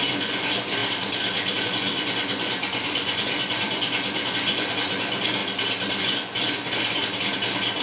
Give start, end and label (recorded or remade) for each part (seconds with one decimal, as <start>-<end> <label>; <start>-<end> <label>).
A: 0.0-0.8 remade; 0.8-1.6 recorded; 1.6-5.4 remade; 5.4-6.0 recorded; 6.0-7.0 remade; 7.0-7.8 recorded